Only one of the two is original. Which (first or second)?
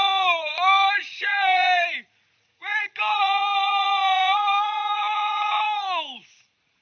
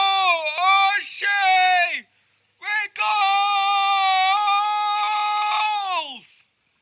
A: second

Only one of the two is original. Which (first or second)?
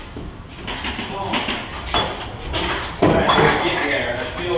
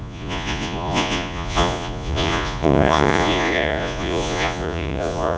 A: first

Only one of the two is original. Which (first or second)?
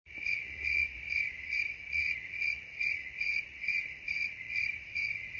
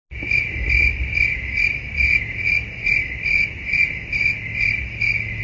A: second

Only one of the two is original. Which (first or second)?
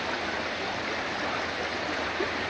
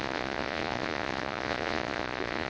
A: first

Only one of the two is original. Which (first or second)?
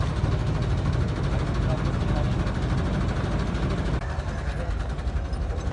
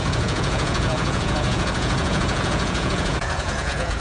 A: first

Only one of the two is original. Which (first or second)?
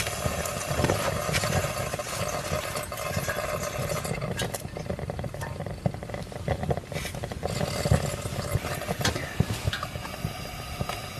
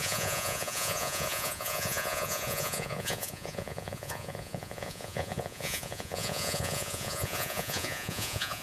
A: first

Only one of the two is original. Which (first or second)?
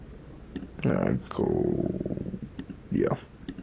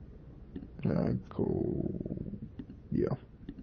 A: first